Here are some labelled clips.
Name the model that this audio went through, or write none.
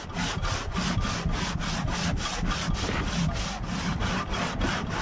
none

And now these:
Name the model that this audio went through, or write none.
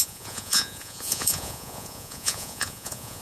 vocoder, Vocos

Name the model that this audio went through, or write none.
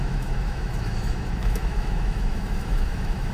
autoencoder, DAC-VAE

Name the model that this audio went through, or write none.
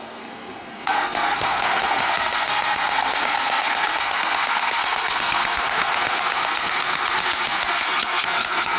codec, SNAC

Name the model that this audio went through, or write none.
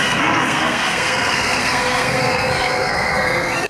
codec, SNAC